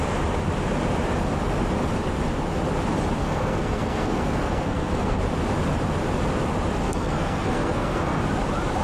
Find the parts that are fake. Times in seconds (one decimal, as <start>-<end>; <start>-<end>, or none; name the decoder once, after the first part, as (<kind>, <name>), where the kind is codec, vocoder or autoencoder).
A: 3.2-5.2 (codec, SNAC); 6.8-8.2